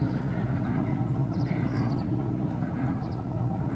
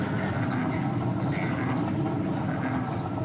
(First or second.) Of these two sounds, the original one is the second